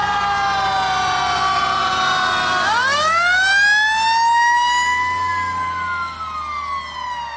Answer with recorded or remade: recorded